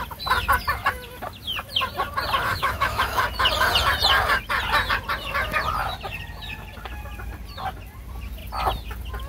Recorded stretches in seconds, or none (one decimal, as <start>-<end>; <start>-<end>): 0.0-2.5; 3.2-9.3